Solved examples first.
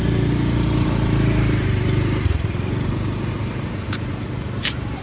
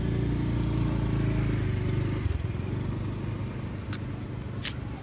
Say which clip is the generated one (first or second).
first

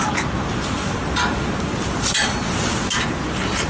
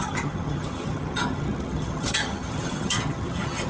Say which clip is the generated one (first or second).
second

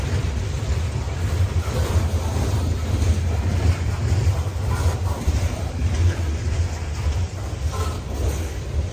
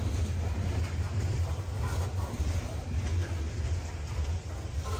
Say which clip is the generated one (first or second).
first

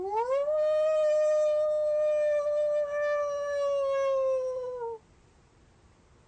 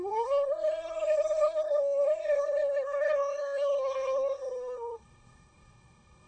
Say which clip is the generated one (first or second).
second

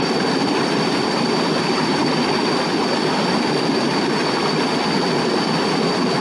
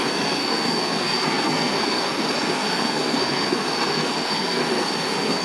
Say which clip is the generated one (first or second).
second